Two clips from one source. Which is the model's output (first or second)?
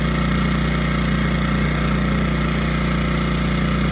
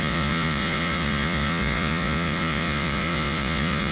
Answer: second